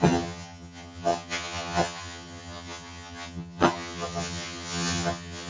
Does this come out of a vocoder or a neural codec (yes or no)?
yes